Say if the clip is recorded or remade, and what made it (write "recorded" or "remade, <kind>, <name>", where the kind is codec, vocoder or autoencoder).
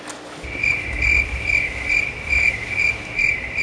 recorded